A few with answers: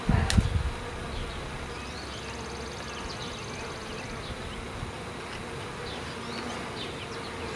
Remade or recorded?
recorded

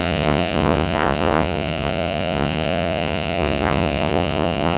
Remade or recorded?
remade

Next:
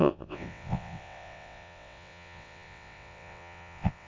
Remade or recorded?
remade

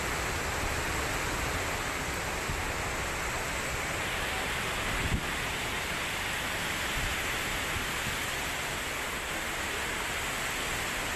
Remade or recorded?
recorded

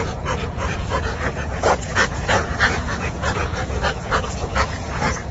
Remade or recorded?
remade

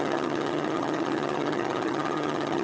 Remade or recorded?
remade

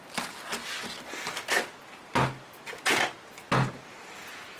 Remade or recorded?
recorded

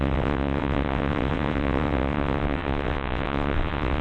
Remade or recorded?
remade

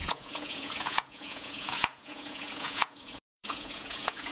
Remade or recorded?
remade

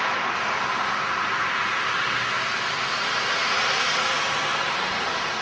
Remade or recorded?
recorded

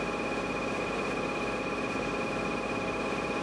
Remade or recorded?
recorded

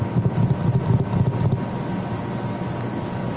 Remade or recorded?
recorded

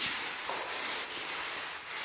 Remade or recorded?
recorded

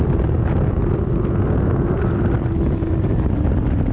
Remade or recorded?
remade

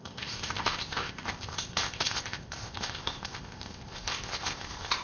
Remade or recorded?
remade